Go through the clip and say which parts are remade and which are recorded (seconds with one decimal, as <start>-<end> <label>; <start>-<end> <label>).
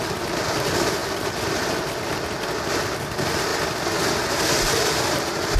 0.0-1.0 recorded; 1.0-2.0 remade; 2.0-5.6 recorded